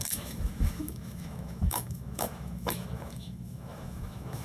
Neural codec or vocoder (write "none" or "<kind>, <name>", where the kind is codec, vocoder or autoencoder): autoencoder, DAC-VAE